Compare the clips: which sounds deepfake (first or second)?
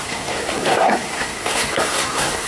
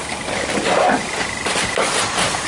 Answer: first